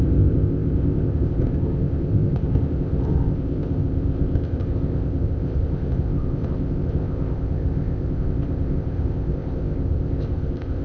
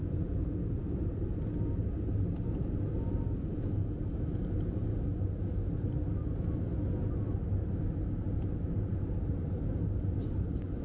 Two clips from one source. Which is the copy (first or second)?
first